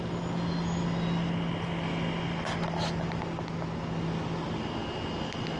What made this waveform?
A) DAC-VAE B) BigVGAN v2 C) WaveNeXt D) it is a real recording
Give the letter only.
D